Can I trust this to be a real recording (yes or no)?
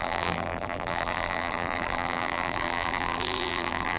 no